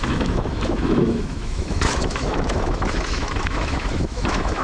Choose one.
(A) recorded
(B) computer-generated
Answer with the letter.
B